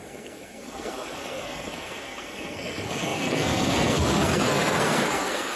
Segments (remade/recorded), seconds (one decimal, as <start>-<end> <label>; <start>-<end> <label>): 0.0-5.5 remade